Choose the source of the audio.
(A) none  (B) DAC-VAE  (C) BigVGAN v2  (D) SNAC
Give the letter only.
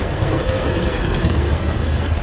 D